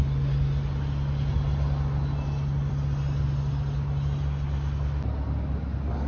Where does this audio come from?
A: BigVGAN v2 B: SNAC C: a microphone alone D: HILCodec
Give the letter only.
C